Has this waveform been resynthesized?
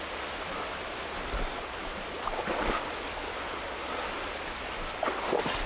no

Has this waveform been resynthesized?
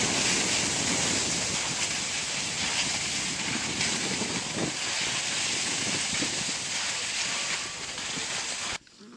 no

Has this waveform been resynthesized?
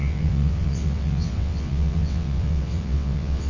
yes